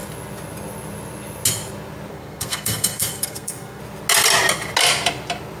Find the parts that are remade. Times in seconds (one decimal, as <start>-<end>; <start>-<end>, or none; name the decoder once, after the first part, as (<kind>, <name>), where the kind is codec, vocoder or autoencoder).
2.1-3.8 (codec, SNAC)